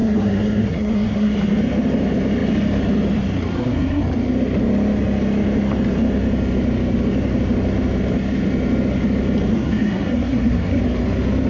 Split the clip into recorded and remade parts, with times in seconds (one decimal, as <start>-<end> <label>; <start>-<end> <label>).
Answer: 0.0-1.3 remade; 1.3-3.5 recorded; 3.5-4.0 remade; 4.0-9.5 recorded; 9.5-10.8 remade; 10.8-11.5 recorded